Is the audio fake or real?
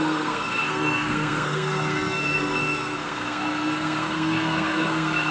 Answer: fake